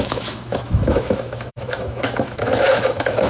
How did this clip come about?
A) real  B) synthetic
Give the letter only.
B